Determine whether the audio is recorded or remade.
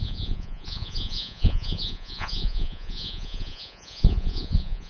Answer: remade